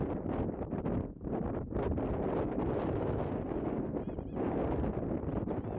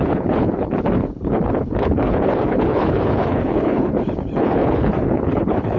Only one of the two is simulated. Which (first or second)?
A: second